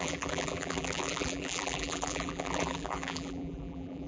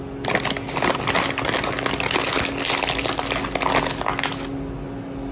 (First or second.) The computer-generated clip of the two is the first